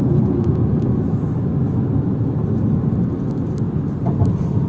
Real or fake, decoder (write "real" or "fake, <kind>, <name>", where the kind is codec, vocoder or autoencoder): real